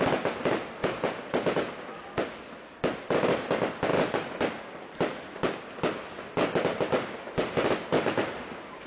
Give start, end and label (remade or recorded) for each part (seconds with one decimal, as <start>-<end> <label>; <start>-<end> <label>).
0.0-0.8 recorded; 0.8-1.7 remade; 1.7-8.9 recorded